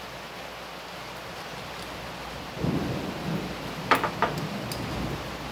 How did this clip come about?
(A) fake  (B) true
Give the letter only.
B